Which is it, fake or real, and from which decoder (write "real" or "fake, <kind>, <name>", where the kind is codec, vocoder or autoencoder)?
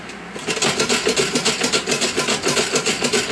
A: real